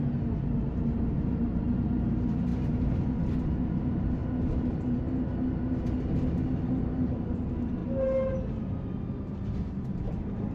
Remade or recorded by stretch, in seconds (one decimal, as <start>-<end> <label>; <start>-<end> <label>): 0.0-2.5 remade; 2.5-3.8 recorded; 3.8-4.2 remade; 4.2-7.0 recorded; 7.0-7.8 remade; 7.8-9.3 recorded; 9.3-10.5 remade

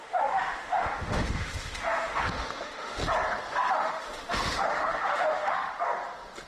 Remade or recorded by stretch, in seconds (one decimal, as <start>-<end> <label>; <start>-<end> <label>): 0.0-3.0 remade; 3.0-3.7 recorded; 3.7-5.7 remade; 5.7-6.5 recorded

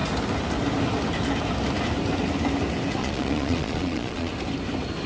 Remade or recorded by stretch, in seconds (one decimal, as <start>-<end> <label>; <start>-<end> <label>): 0.0-3.0 recorded; 3.0-4.3 remade; 4.3-5.1 recorded

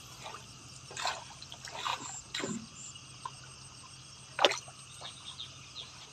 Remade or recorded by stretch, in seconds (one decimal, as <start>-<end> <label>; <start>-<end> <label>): 0.0-6.1 recorded

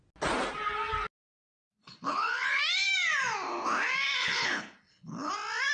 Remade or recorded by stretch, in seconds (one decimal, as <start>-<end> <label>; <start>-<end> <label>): 0.0-1.8 recorded; 1.8-2.6 remade; 2.6-4.2 recorded; 4.2-5.3 remade; 5.3-5.7 recorded

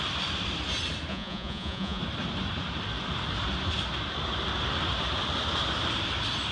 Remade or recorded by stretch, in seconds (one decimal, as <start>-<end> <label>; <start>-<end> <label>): 0.0-1.1 recorded; 1.1-2.0 remade; 2.0-6.5 recorded

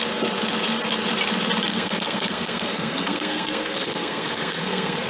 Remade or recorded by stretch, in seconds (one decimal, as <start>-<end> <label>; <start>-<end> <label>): 0.0-1.7 recorded; 1.7-5.1 remade